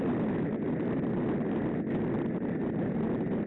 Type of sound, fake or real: real